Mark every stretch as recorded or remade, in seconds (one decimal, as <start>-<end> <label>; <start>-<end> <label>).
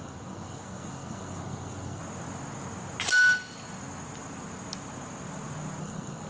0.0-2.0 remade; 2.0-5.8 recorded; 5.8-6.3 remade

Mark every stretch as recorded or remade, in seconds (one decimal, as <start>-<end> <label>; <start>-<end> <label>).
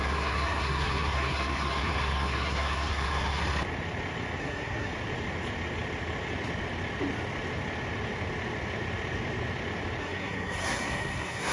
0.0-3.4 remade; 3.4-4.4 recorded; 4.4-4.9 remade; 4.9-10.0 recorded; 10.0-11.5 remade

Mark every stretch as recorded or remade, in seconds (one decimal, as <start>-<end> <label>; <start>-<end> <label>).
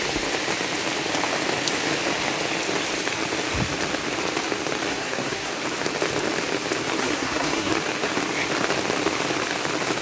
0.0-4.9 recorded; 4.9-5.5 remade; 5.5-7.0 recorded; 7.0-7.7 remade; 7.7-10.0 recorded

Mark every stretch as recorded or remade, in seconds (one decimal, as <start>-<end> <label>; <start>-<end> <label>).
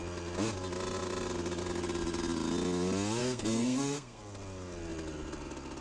0.0-3.2 recorded; 3.2-4.2 remade; 4.2-5.8 recorded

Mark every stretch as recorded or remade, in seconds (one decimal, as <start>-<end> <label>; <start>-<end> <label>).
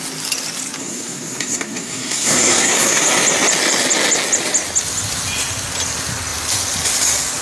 0.0-0.8 recorded; 0.8-3.0 remade; 3.0-7.4 recorded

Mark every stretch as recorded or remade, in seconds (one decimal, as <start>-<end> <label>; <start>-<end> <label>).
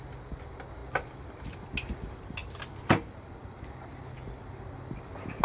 0.0-5.4 recorded